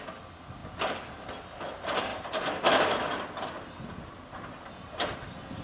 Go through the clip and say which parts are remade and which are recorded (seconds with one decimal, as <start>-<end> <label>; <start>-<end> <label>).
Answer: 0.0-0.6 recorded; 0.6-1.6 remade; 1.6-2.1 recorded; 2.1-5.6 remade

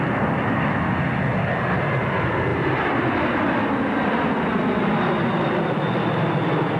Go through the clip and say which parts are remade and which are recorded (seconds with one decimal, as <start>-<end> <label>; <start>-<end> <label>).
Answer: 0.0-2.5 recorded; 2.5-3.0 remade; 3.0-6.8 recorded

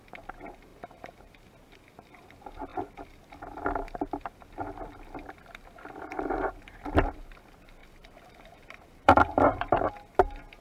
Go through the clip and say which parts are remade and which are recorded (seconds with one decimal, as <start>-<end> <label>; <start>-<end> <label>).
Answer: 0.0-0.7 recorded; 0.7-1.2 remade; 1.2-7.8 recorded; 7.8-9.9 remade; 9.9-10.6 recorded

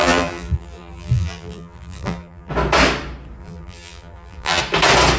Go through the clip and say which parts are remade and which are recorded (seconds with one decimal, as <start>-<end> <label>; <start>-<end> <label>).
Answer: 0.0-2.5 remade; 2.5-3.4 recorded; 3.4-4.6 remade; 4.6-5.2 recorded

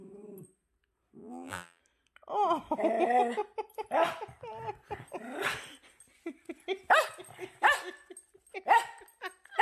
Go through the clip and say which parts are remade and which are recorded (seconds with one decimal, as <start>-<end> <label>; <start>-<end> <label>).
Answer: 0.0-1.2 recorded; 1.2-1.8 remade; 1.8-9.6 recorded

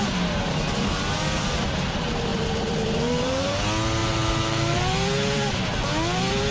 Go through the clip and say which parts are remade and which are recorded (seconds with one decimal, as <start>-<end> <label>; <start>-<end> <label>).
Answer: 0.0-2.3 recorded; 2.3-3.6 remade; 3.6-4.0 recorded; 4.0-4.8 remade; 4.8-6.5 recorded

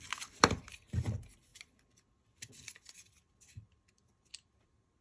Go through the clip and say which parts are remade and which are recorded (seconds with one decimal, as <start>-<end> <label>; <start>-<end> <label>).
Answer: 0.0-1.5 remade; 1.5-2.5 recorded; 2.5-5.0 remade